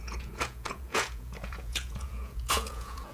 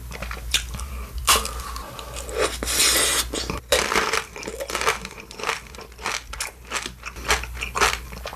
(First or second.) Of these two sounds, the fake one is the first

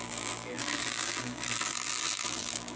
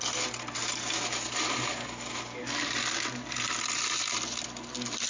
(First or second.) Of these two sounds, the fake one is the first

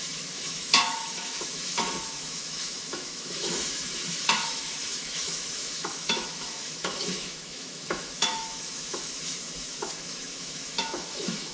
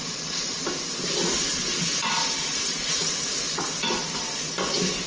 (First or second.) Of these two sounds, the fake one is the first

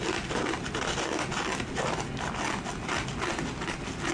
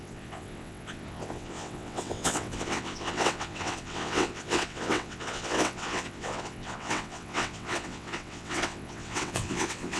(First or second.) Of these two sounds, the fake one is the second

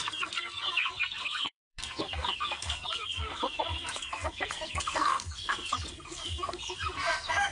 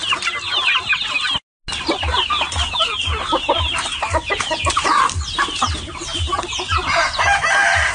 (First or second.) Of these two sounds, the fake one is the first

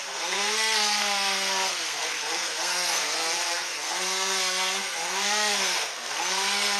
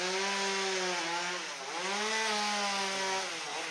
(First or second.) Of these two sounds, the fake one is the first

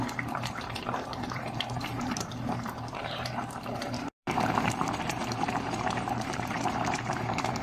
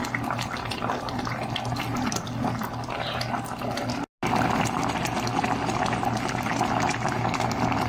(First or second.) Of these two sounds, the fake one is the first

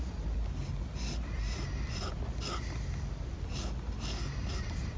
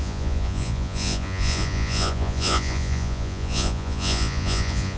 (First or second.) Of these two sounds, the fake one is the second